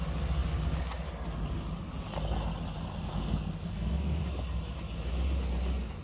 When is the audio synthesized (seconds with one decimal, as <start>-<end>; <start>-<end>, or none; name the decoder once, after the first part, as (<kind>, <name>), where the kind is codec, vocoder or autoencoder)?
2.9-4.2 (codec, SNAC)